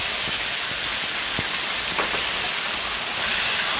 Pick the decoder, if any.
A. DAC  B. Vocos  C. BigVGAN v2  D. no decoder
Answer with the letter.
D